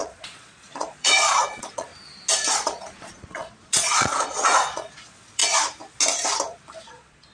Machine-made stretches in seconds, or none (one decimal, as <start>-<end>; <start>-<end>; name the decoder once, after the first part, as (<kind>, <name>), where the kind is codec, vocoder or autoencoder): 0.0-1.9 (vocoder, Vocos); 2.5-5.4; 6.8-7.3